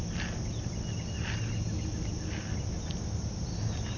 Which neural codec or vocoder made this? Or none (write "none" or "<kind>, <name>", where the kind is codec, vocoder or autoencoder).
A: none